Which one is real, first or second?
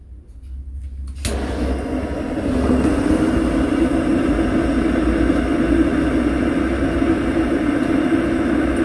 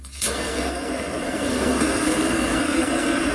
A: first